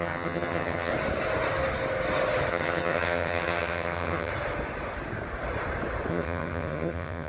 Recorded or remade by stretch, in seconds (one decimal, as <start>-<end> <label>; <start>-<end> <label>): 0.0-0.9 remade; 0.9-2.5 recorded; 2.5-4.3 remade; 4.3-6.1 recorded; 6.1-7.3 remade